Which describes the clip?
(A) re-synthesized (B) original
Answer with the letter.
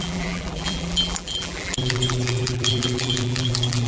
A